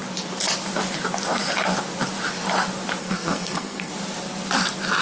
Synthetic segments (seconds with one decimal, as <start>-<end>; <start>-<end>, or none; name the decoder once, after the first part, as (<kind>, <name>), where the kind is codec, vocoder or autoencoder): 3.0-3.9 (codec, SNAC)